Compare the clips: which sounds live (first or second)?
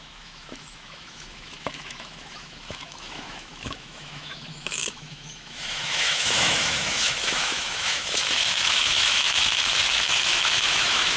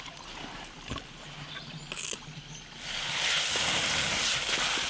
second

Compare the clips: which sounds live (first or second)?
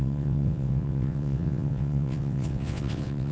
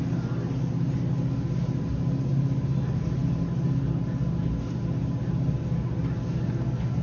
second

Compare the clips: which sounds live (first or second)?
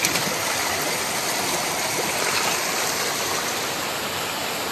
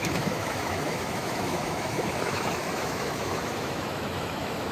first